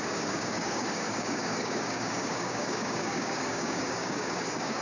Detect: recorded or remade remade